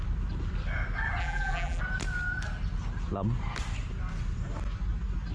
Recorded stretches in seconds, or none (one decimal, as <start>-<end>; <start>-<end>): 0.0-1.2; 1.8-5.3